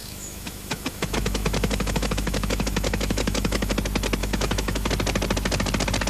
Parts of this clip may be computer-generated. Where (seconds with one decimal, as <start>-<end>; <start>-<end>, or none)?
0.0-3.7; 4.2-4.9